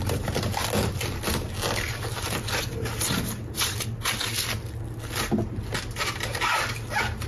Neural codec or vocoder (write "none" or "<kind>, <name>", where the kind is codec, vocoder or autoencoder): none